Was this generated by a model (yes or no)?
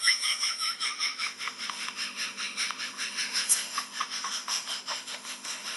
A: yes